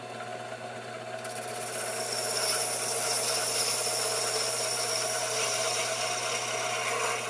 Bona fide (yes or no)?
yes